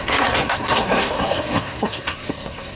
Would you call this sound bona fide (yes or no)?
no